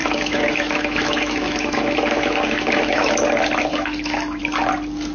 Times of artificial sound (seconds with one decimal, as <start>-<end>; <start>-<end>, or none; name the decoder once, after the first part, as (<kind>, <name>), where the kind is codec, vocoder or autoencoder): 0.0-3.1 (autoencoder, DAC-VAE); 3.7-4.4